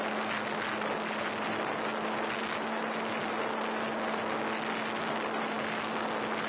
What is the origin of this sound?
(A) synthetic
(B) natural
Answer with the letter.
B